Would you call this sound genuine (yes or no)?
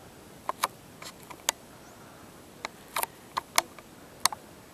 yes